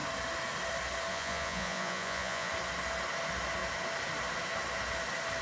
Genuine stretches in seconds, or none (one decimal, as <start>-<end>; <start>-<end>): 0.0-1.1; 2.5-5.4